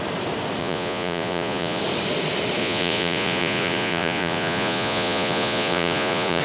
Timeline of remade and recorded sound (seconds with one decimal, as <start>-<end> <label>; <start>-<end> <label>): 0.0-0.6 recorded; 0.6-1.8 remade; 1.8-2.6 recorded; 2.6-6.4 remade